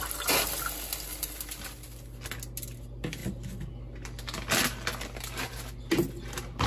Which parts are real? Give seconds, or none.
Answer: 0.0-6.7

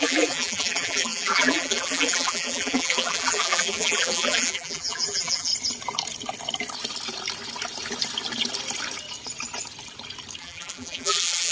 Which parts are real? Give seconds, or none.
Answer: 5.5-10.4